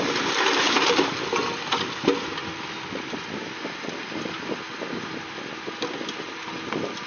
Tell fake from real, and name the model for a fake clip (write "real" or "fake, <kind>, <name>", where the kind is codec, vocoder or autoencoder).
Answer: real